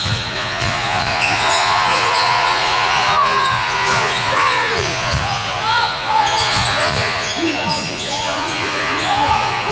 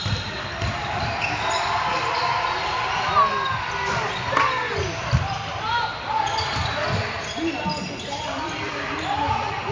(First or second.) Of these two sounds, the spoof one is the first